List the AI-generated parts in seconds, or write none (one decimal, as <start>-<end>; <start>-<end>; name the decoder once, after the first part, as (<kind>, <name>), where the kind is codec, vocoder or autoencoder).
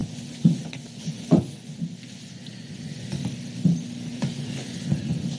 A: 0.0-3.2 (vocoder, Vocos); 4.1-5.4